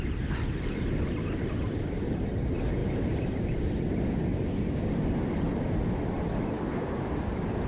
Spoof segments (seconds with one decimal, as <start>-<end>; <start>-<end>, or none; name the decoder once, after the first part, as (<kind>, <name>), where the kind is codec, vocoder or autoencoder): 2.8-3.3 (vocoder, BigVGAN v2); 4.3-4.8